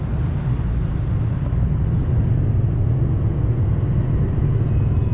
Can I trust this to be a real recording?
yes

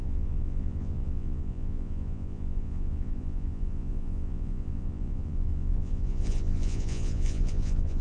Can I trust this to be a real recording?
no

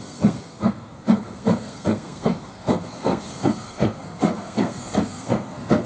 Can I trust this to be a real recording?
no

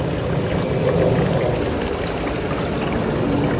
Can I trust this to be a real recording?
yes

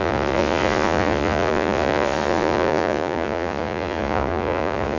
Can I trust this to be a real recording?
no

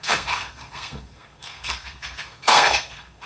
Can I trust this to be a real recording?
no